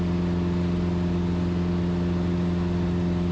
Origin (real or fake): real